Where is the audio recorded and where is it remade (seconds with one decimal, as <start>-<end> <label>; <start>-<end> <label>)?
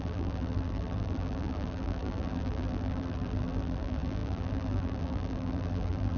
0.0-6.2 remade